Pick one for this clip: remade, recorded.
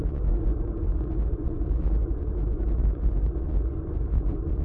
remade